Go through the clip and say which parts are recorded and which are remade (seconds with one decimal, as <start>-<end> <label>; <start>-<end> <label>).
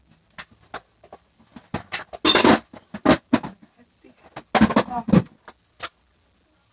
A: 0.0-6.7 recorded